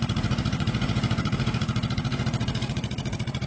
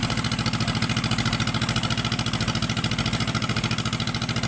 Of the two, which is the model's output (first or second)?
first